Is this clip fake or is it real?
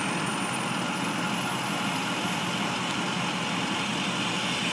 real